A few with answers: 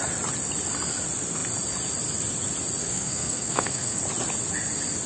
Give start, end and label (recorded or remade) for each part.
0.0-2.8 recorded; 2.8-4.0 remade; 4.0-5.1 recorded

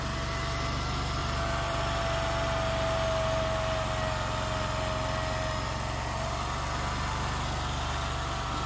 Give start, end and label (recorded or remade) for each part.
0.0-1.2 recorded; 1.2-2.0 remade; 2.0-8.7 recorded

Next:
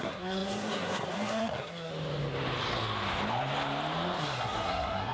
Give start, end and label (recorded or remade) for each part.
0.0-1.9 remade; 1.9-4.2 recorded; 4.2-5.1 remade